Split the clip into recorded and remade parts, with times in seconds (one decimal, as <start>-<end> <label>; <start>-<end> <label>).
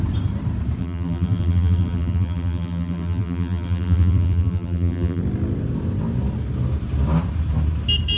0.0-0.8 recorded; 0.8-5.2 remade; 5.2-8.2 recorded